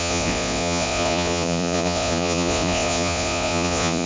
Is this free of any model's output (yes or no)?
no